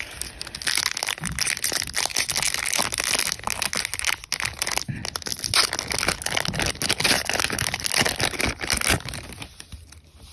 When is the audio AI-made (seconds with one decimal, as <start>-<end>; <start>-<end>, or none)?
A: none